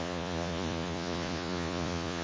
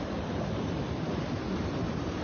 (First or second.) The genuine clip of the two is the second